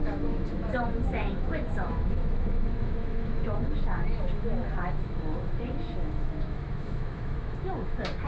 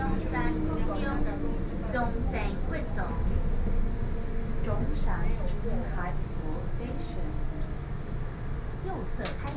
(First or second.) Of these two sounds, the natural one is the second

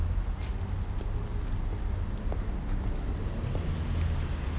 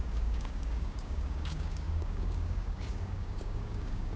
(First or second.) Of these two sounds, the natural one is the first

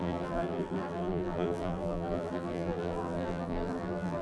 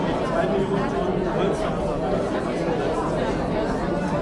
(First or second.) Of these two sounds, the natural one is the second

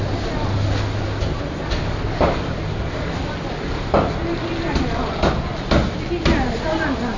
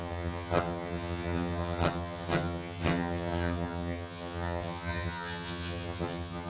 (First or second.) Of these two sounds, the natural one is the first